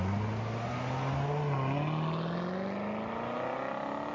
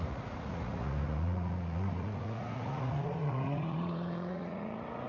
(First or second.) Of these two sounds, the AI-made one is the second